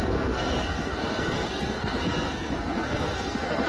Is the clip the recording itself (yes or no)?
no